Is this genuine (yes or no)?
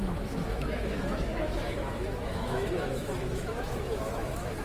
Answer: no